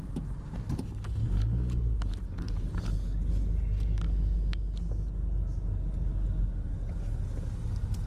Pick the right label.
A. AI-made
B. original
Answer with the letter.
B